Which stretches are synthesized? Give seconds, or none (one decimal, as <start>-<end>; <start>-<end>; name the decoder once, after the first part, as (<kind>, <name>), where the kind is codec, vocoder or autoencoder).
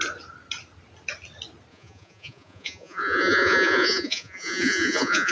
1.7-5.3 (vocoder, Vocos)